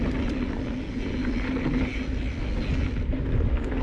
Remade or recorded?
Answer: recorded